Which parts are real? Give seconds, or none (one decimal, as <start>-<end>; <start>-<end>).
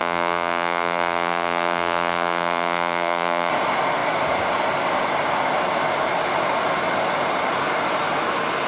3.5-8.7